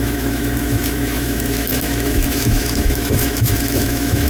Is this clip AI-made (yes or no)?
yes